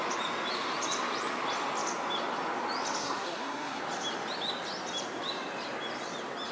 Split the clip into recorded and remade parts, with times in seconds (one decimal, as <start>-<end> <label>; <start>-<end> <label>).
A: 0.0-3.0 recorded; 3.0-3.8 remade; 3.8-6.5 recorded